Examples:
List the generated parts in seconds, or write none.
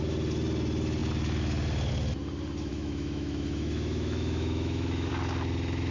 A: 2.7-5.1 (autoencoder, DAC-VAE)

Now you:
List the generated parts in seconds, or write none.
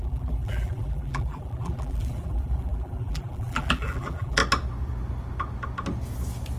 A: 0.0-4.4 (vocoder, BigVGAN v2)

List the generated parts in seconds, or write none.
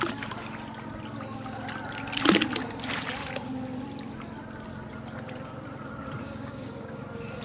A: 6.2-7.0 (codec, DAC)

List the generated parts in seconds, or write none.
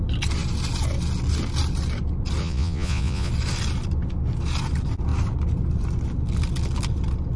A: 2.4-3.3 (vocoder, Vocos)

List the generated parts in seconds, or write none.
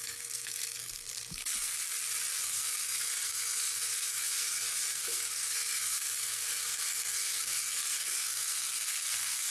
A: 0.0-1.7 (codec, SNAC); 2.3-9.5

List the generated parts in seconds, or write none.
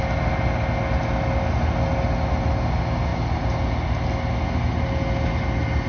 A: none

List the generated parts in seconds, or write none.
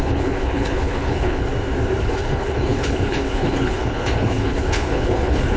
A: 0.0-1.5 (codec, HILCodec); 2.0-5.6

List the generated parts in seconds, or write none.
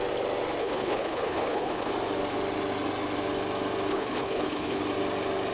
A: 0.6-1.9 (codec, HILCodec); 3.9-4.8